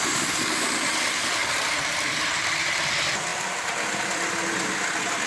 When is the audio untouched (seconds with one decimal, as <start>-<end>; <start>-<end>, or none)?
0.0-5.3